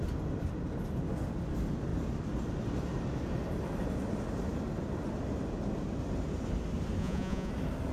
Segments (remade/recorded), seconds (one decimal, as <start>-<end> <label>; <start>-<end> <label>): 0.0-7.0 recorded; 7.0-7.5 remade; 7.5-7.9 recorded